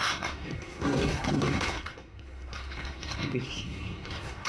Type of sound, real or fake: fake